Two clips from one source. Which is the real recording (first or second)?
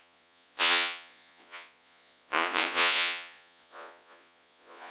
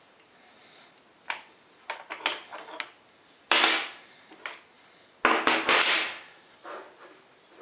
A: second